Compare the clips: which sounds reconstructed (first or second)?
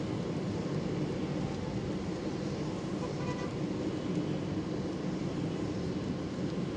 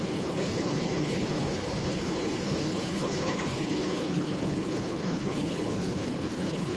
second